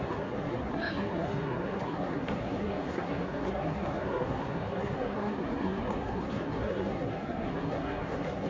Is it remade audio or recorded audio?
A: remade